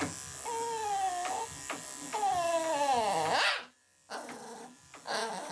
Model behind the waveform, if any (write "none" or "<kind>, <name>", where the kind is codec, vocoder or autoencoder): none